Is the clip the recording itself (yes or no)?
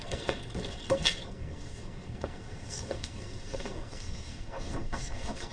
no